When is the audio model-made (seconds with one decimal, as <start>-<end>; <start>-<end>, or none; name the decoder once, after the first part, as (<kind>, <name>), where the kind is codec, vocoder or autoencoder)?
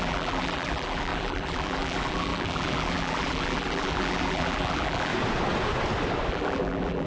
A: 0.0-5.1 (vocoder, BigVGAN v2); 6.3-7.1